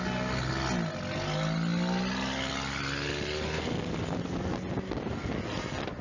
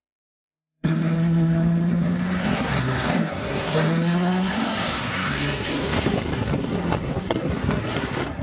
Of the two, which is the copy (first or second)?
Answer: second